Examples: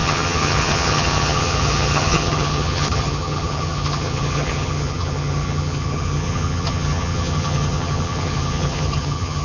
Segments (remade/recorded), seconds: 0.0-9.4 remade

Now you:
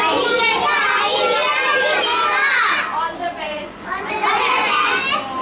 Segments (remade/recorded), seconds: 0.0-3.2 recorded; 3.2-4.9 remade; 4.9-5.4 recorded

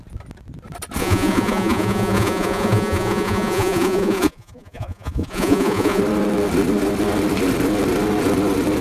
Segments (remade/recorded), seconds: 0.0-1.0 recorded; 1.0-6.0 remade; 6.0-8.8 recorded

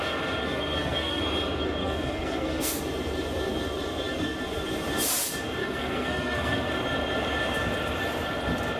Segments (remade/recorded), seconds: 0.0-0.4 recorded; 0.4-1.2 remade; 1.2-1.8 recorded; 1.8-2.8 remade; 2.8-5.6 recorded; 5.6-6.7 remade; 6.7-8.8 recorded

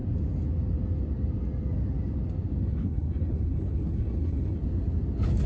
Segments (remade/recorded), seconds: 0.0-2.6 recorded; 2.6-4.6 remade; 4.6-5.5 recorded

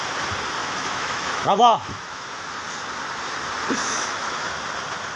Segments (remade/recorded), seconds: 0.0-0.6 recorded; 0.6-2.5 remade; 2.5-3.8 recorded; 3.8-4.5 remade; 4.5-5.2 recorded